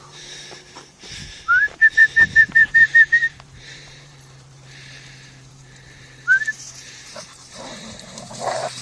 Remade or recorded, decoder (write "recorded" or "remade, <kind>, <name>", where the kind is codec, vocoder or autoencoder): remade, vocoder, BigVGAN v2